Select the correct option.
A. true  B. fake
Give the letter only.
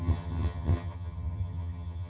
B